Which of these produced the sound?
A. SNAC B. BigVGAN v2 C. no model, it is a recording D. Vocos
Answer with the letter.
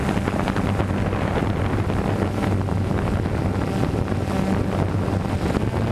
C